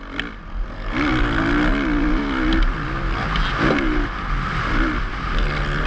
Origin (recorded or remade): recorded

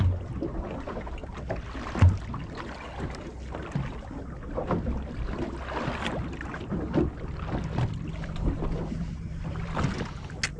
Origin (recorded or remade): recorded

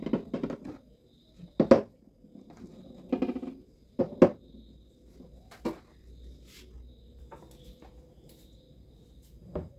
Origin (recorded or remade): recorded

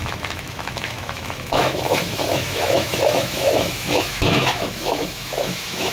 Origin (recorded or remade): remade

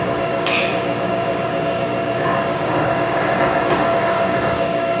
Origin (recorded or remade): remade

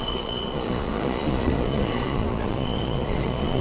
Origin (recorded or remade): remade